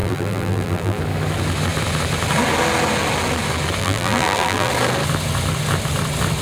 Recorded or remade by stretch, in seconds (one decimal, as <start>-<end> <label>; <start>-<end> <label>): 0.0-1.0 remade; 1.0-3.8 recorded; 3.8-4.7 remade; 4.7-6.4 recorded